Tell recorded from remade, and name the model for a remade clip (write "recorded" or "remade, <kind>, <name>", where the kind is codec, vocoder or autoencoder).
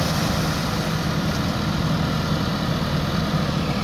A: recorded